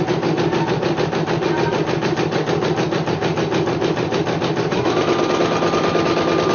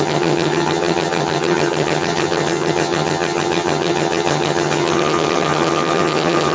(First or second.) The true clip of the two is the first